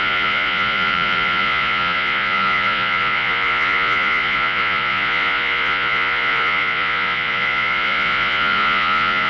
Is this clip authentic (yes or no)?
no